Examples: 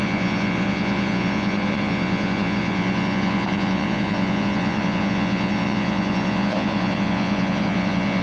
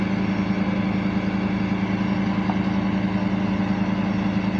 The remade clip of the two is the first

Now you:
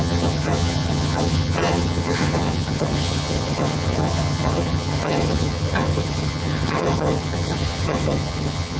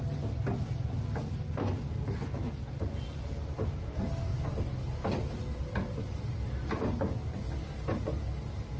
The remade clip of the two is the first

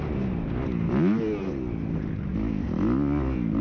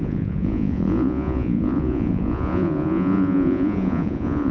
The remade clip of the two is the second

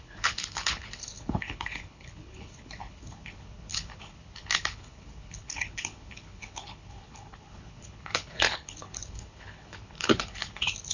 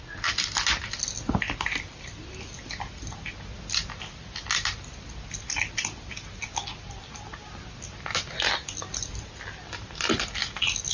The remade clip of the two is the first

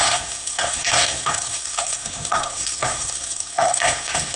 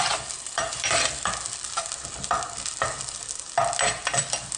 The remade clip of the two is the first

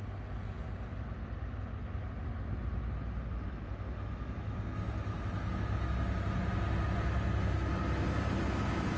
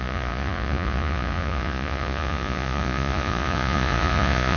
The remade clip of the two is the second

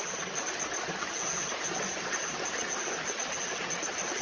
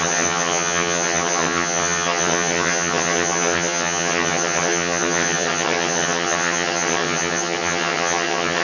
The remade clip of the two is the second